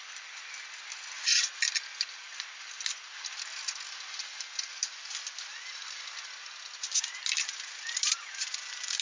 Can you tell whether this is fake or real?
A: real